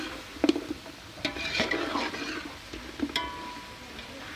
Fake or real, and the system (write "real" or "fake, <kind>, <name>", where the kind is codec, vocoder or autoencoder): real